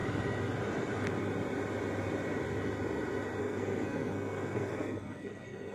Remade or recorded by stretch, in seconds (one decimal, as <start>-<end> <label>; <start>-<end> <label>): 0.0-3.4 recorded; 3.4-5.7 remade